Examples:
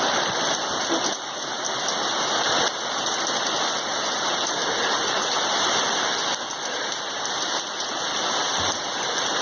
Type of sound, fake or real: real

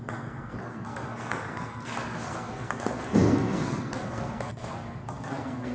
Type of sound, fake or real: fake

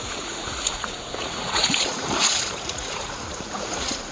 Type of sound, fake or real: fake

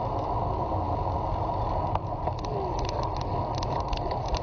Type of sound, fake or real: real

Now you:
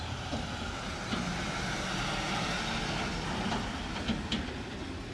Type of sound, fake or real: real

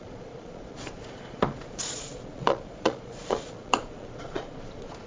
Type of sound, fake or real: fake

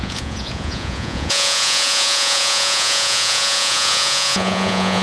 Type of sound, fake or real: fake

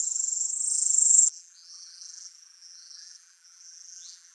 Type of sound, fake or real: fake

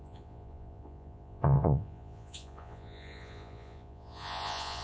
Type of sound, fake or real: fake